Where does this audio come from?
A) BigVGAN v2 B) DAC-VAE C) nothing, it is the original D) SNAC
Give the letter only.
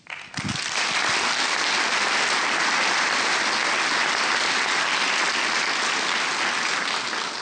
C